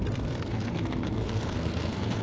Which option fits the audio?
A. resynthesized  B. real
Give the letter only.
A